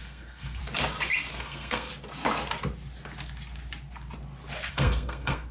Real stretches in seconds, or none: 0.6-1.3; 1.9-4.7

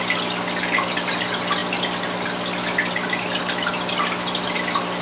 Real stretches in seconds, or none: 0.0-5.0